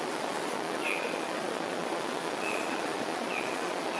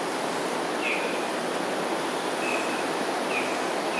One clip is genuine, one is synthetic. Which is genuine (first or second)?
second